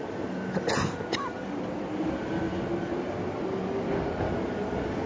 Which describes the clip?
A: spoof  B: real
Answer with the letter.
B